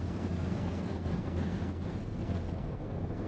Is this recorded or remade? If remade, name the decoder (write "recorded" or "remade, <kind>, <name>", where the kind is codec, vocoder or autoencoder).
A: remade, codec, SNAC